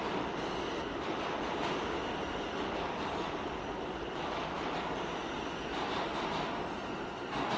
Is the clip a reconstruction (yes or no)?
no